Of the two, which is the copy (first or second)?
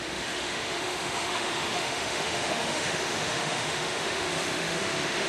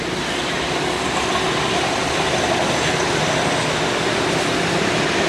first